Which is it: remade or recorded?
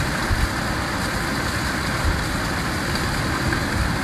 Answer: recorded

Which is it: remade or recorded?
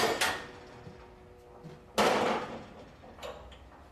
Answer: recorded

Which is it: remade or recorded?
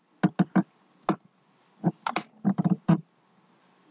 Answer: recorded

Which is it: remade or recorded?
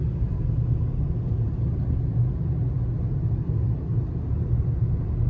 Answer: recorded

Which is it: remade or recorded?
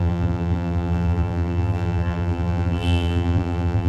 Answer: remade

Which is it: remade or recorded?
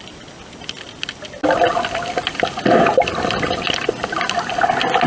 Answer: recorded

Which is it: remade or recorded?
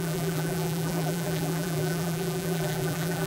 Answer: remade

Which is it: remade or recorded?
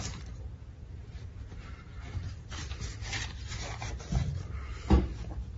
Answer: remade